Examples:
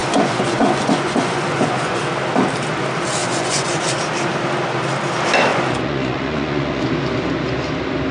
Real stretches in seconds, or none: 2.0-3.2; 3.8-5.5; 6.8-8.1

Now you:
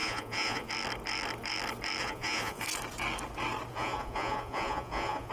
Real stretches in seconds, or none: 0.7-2.0; 2.6-3.7

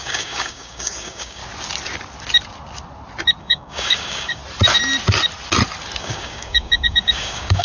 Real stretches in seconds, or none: 1.4-3.4; 4.4-6.0

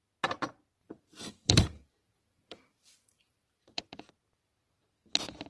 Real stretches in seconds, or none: 0.0-0.8; 4.1-5.5

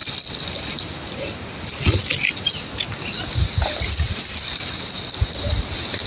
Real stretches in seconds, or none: 0.0-6.1

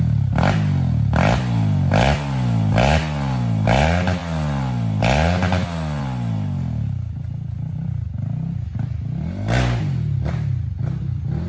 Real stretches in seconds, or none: 0.0-11.5

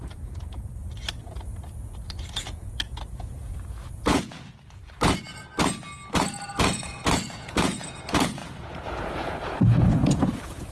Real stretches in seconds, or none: 0.7-1.2; 4.8-6.5